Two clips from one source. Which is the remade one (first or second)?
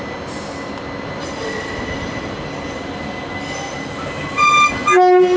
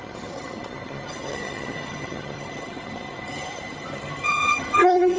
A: second